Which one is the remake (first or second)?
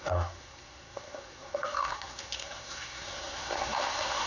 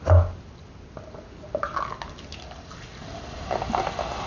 first